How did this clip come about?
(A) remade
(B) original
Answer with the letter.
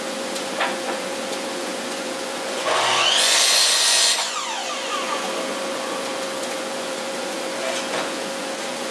A